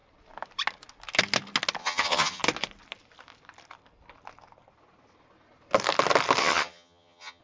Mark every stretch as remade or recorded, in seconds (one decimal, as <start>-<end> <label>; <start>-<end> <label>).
0.0-1.8 recorded; 1.8-2.4 remade; 2.4-6.4 recorded; 6.4-7.4 remade